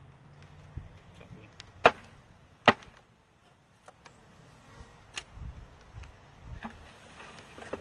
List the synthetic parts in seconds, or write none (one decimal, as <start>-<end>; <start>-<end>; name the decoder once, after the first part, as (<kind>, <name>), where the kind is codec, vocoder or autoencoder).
none